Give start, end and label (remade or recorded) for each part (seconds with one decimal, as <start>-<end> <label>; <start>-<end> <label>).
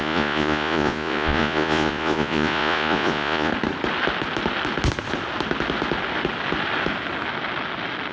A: 0.0-3.5 remade; 3.5-8.1 recorded